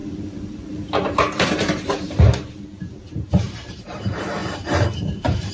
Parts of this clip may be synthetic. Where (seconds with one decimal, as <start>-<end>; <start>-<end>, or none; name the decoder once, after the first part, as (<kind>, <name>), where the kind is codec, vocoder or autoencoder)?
0.0-5.5 (vocoder, BigVGAN v2)